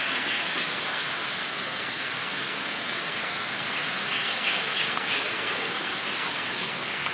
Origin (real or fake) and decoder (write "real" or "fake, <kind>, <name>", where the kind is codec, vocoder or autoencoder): fake, codec, SNAC